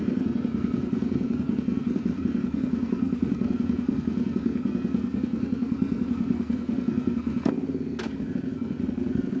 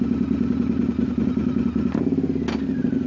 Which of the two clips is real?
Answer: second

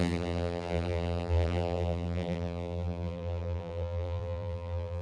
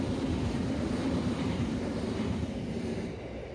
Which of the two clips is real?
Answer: second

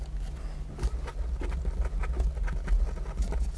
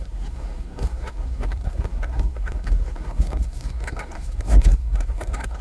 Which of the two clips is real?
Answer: first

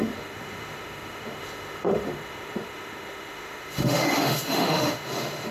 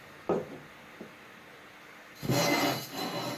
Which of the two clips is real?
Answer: second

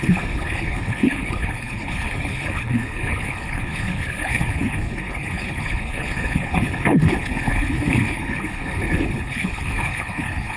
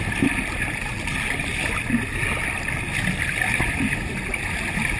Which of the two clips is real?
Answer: second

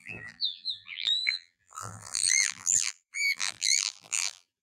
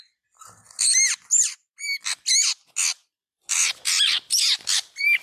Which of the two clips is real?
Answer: second